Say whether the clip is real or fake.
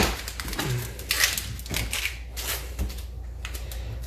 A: real